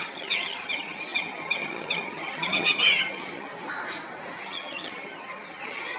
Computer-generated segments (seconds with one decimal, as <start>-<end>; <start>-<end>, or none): 0.0-3.5; 4.4-6.0